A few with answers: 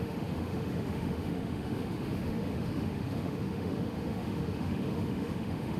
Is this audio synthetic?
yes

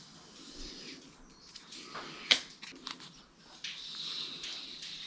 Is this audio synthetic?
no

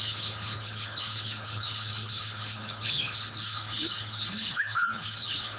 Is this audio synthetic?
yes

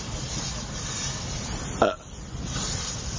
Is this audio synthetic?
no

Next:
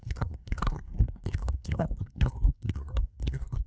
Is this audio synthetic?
yes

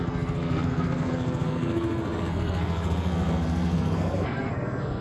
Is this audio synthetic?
yes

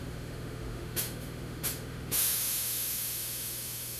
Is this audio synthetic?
yes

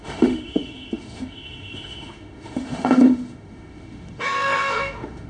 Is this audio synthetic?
yes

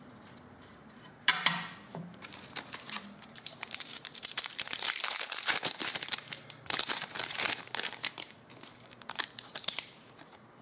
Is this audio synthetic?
yes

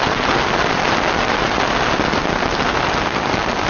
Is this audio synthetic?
no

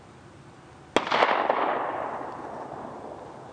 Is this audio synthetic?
no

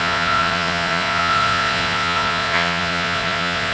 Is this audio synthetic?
yes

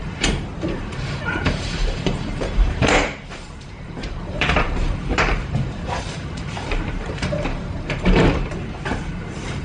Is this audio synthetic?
yes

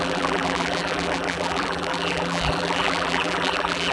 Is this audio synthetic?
yes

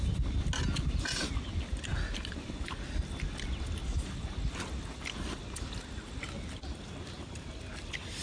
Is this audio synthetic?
no